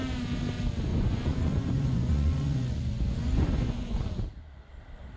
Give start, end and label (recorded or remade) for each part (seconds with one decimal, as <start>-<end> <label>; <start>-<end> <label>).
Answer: 0.0-0.9 recorded; 0.9-4.0 remade; 4.0-5.2 recorded